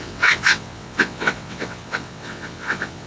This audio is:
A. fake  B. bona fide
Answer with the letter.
A